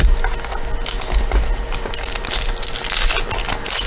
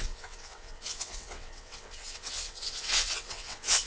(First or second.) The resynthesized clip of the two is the second